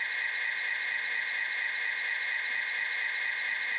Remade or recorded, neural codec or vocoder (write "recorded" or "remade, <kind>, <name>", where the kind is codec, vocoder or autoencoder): recorded